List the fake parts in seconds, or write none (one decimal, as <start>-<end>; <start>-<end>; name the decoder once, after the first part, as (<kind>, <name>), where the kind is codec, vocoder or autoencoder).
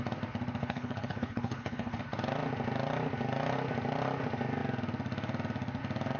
0.6-2.0 (codec, HILCodec)